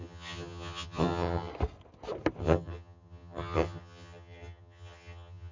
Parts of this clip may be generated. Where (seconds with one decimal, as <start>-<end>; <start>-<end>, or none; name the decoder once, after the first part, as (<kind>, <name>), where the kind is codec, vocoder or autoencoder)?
0.0-1.5 (vocoder, HiFi-GAN); 2.4-5.5

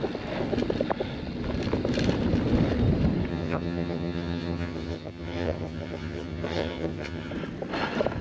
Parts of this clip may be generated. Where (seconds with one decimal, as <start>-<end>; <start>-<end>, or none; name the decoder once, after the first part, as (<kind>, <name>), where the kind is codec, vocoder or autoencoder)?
3.3-7.3 (vocoder, HiFi-GAN)

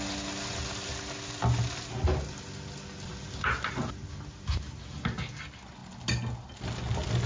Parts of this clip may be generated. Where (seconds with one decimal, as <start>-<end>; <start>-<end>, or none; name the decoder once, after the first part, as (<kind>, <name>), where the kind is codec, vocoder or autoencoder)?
none

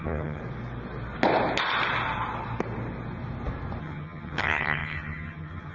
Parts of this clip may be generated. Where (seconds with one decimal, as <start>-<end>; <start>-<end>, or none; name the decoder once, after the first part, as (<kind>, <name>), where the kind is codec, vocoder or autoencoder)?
0.0-0.4 (vocoder, HiFi-GAN); 3.8-5.7

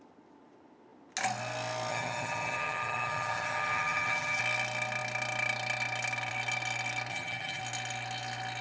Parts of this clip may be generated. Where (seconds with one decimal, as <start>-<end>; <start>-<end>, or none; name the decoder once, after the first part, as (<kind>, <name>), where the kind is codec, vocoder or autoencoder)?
1.9-4.4 (vocoder, HiFi-GAN); 7.1-7.6